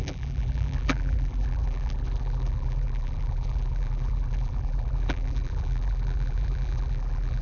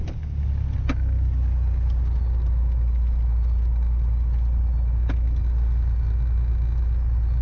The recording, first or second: second